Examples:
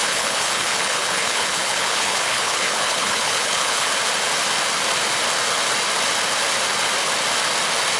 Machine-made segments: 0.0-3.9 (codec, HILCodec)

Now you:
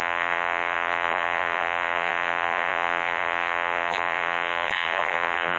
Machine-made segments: 0.0-5.6 (vocoder, BigVGAN v2)

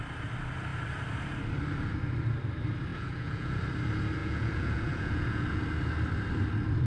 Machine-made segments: 2.9-3.6 (vocoder, Vocos); 4.2-5.6

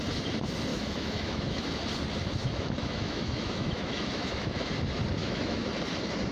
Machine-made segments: 0.7-1.8 (autoencoder, DAC-VAE); 2.4-4.7; 5.2-5.7

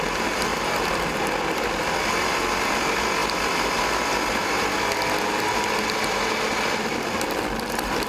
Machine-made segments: none

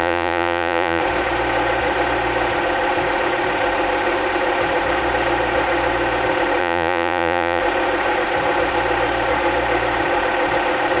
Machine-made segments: 0.0-1.0 (vocoder, Vocos); 6.6-7.6

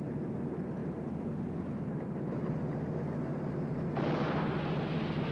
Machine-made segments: none